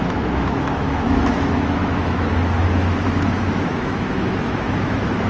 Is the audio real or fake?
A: fake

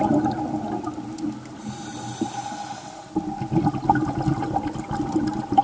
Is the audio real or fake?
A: real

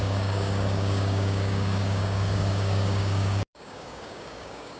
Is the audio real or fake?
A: fake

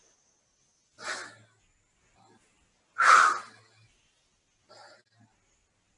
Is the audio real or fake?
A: real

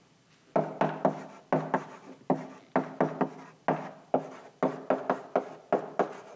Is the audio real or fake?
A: real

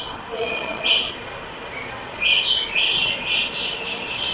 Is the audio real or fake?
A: fake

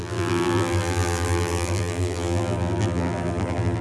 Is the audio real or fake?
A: fake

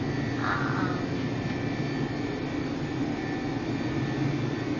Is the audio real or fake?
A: real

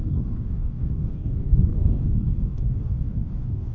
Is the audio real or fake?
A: fake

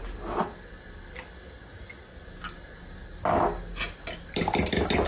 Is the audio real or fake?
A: real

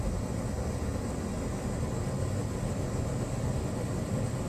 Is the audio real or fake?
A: real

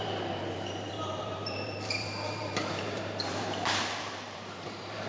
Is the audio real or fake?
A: fake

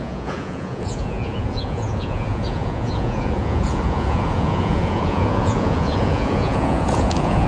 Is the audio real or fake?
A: fake